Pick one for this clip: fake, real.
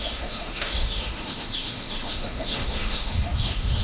fake